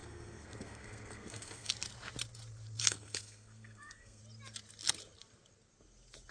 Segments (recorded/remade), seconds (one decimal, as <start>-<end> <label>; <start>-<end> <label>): 0.0-1.7 remade; 1.7-2.8 recorded; 2.8-4.2 remade; 4.2-6.3 recorded